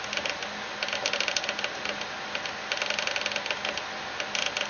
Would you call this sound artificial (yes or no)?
yes